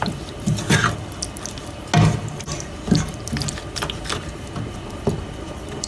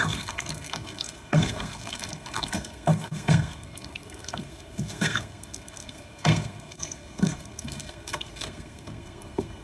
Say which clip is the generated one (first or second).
second